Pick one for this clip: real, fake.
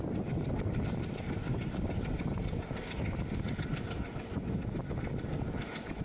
real